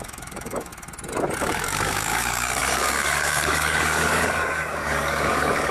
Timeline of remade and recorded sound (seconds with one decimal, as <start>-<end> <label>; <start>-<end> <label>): 0.0-0.7 remade; 0.7-1.4 recorded; 1.4-5.7 remade